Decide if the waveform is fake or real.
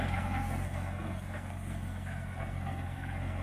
fake